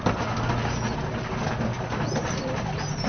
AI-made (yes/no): no